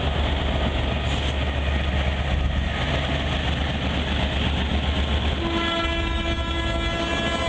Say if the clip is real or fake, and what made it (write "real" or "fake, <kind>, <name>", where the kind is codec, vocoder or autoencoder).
real